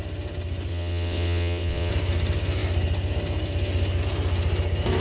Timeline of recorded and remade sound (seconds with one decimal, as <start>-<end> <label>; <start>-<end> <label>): 0.0-0.7 recorded; 0.7-1.9 remade; 1.9-5.0 recorded